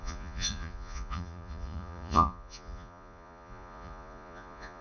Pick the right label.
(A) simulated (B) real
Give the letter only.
A